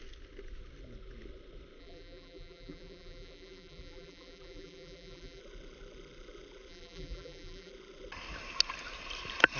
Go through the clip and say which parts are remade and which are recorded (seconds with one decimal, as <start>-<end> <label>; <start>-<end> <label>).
0.0-1.8 recorded; 1.8-5.4 remade; 5.4-6.7 recorded; 6.7-7.7 remade; 7.7-9.6 recorded